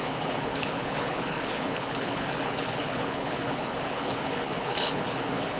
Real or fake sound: fake